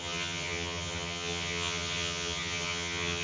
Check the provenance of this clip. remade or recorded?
remade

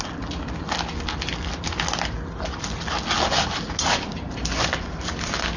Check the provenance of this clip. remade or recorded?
recorded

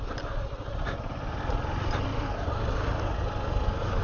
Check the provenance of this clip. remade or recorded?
recorded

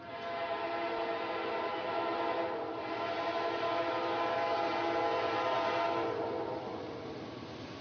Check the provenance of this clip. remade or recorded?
recorded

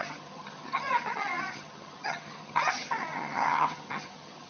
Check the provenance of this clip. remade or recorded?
remade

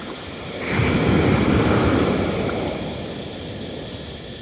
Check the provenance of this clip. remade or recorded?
recorded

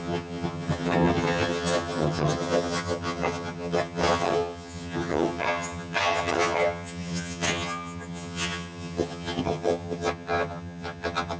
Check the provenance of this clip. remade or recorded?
remade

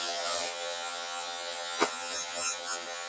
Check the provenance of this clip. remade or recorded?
remade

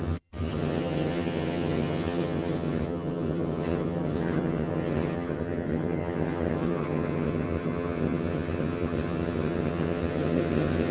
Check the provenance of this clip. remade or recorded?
remade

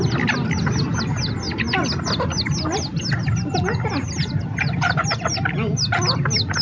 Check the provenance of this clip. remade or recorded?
recorded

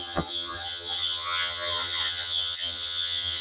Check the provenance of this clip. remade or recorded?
remade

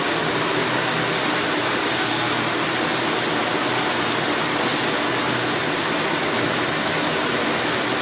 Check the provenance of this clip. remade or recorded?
recorded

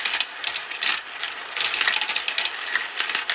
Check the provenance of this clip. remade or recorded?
recorded